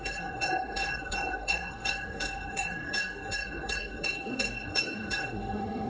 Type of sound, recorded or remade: remade